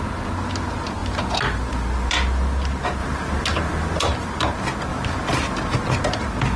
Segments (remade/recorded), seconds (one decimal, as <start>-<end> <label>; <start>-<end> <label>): 0.0-6.6 recorded